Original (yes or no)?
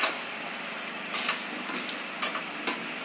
yes